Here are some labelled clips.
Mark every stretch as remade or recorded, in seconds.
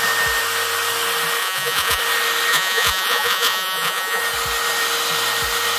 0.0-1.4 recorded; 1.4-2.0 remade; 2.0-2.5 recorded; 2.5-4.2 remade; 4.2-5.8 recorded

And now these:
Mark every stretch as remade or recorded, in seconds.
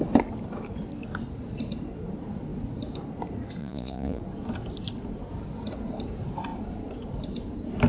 0.0-3.6 recorded; 3.6-4.2 remade; 4.2-7.9 recorded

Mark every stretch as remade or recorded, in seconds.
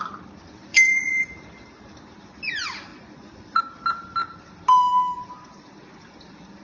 0.0-0.7 recorded; 0.7-1.3 remade; 1.3-2.9 recorded; 2.9-3.6 remade; 3.6-6.6 recorded